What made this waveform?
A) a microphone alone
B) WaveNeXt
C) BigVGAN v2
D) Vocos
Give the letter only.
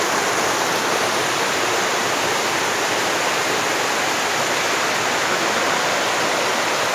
A